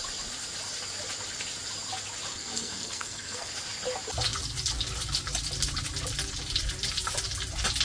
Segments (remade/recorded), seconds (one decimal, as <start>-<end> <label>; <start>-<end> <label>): 0.0-2.3 recorded; 2.3-3.5 remade; 3.5-7.8 recorded